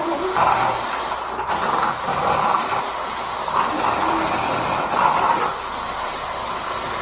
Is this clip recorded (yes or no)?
yes